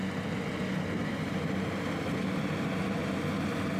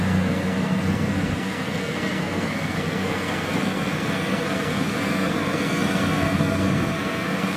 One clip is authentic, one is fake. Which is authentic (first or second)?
first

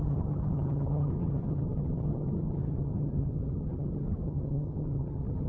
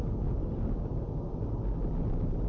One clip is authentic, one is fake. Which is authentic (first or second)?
second